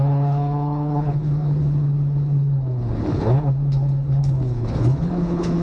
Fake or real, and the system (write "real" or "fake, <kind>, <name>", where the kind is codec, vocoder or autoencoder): fake, codec, HILCodec